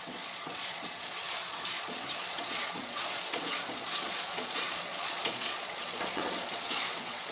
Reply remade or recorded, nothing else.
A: remade